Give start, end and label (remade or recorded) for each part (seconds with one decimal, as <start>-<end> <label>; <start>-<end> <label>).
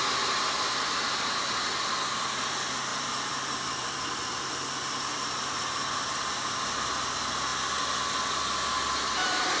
0.0-2.9 recorded; 2.9-4.4 remade; 4.4-9.6 recorded